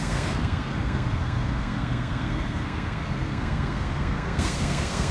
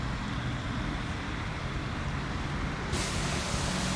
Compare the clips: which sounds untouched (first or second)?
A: second